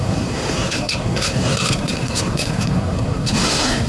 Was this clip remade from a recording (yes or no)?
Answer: yes